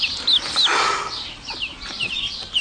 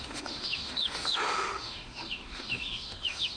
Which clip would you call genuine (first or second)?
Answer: first